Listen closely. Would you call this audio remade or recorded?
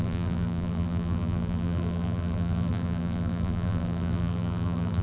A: remade